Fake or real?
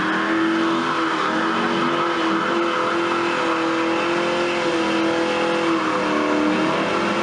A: real